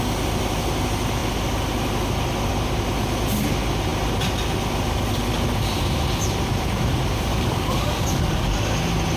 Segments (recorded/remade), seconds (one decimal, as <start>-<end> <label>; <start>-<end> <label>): 0.0-7.3 recorded; 7.3-8.5 remade; 8.5-9.2 recorded

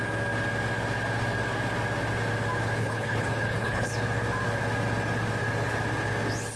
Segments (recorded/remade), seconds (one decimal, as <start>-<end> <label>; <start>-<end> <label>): 0.0-2.8 recorded; 2.8-3.9 remade; 3.9-6.6 recorded

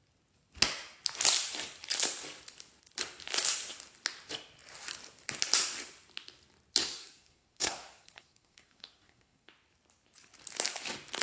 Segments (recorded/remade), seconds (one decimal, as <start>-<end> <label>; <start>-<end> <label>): 0.0-6.8 recorded; 6.8-9.5 remade; 9.5-11.2 recorded

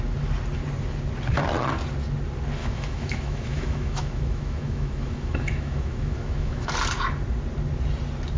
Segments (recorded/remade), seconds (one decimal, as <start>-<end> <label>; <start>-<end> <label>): 0.0-2.6 recorded; 2.6-6.7 remade; 6.7-8.4 recorded